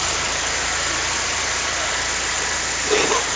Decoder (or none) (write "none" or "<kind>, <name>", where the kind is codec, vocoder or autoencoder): none